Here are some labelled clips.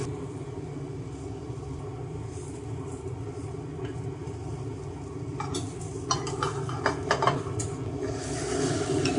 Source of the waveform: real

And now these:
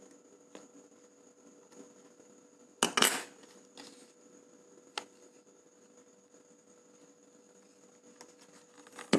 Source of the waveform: real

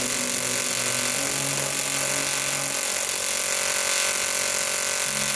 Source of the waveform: real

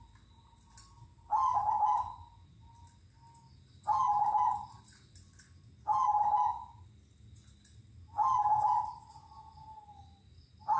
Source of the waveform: real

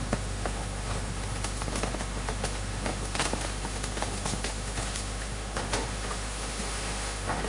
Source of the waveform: fake